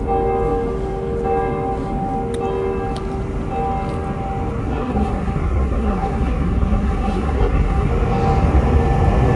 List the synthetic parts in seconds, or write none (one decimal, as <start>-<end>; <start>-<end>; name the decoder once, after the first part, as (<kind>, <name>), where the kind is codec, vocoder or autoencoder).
4.6-7.9 (codec, SNAC)